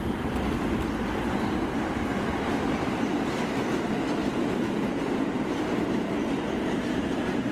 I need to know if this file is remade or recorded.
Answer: recorded